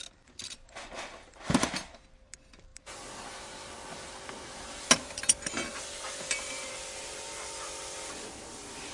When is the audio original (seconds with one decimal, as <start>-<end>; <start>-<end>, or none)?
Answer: 0.0-8.9